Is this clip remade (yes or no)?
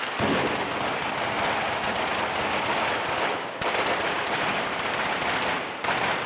no